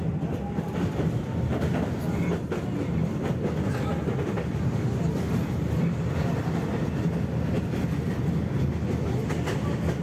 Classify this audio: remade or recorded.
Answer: recorded